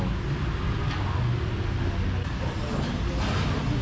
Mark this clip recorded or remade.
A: recorded